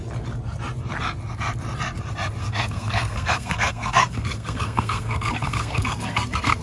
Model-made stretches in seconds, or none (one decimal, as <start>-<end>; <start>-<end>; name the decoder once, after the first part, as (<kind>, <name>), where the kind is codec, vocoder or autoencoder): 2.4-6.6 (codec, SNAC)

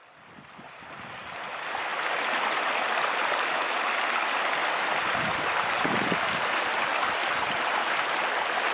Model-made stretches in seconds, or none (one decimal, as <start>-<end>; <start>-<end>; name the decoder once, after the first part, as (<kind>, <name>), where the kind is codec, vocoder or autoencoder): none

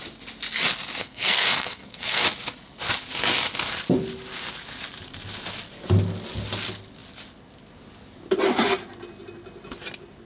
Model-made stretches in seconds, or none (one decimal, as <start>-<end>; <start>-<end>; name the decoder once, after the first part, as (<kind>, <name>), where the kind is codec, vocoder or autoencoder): 1.0-2.2 (codec, SNAC)